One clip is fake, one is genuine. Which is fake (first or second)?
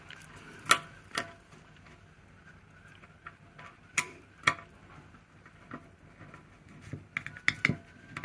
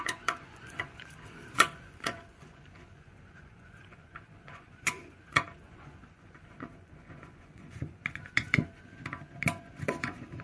second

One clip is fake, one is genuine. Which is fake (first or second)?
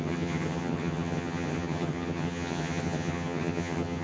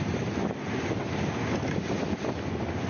first